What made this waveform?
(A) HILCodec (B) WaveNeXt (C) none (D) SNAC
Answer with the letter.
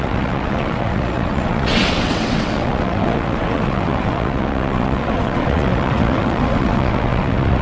B